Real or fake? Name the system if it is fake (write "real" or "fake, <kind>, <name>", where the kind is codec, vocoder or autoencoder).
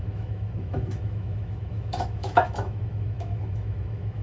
fake, autoencoder, DAC-VAE